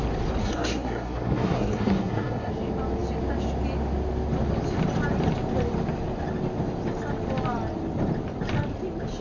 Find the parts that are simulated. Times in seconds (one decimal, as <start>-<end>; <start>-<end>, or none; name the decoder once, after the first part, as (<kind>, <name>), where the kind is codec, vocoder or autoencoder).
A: 0.4-2.5 (codec, SNAC)